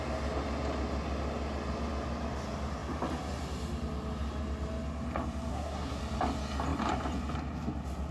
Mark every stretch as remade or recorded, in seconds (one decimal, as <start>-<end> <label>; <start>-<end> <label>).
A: 0.0-5.5 recorded; 5.5-6.0 remade; 6.0-8.1 recorded